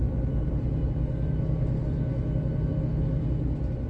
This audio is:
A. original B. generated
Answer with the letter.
A